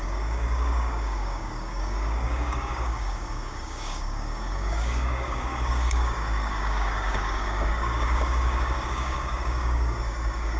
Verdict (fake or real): fake